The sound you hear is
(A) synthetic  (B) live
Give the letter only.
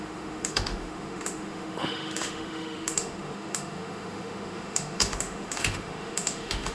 A